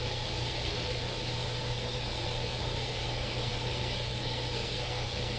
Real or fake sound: fake